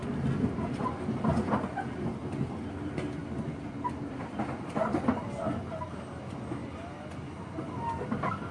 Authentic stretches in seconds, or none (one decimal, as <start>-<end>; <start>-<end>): 0.0-8.5